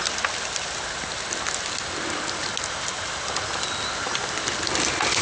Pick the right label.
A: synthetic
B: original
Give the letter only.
B